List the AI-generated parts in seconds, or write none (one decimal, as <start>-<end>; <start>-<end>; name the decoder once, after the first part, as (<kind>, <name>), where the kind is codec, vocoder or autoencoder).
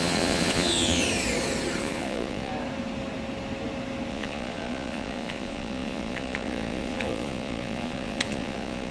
0.0-1.0 (vocoder, Vocos); 1.8-2.5; 4.1-8.9